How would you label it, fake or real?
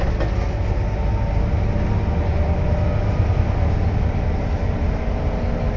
real